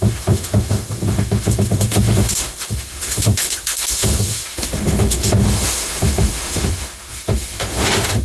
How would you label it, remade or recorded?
remade